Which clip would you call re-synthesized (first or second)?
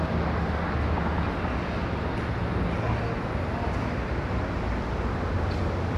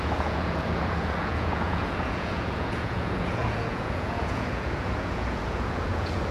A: second